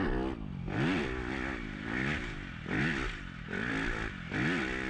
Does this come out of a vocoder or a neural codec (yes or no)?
no